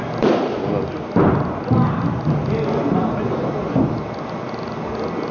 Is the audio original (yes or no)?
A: yes